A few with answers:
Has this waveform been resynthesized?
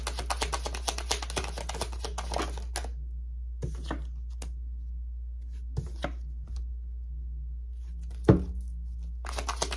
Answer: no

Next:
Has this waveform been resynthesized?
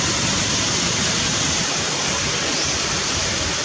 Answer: yes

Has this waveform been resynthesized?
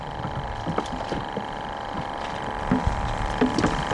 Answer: no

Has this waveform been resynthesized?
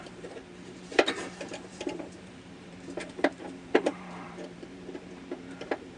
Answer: yes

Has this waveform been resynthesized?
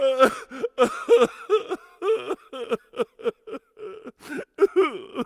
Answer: no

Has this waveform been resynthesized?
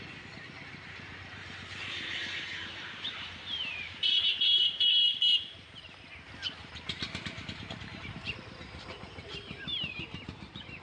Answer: yes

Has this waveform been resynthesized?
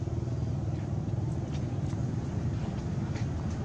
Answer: no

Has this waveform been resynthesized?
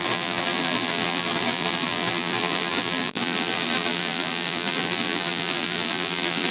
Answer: yes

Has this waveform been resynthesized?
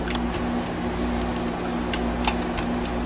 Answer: no